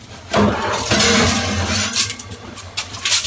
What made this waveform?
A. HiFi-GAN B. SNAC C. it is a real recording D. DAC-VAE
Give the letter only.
C